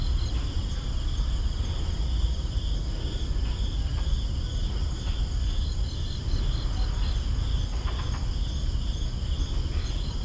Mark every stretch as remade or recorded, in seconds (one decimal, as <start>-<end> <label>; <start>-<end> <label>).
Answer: 0.0-10.2 recorded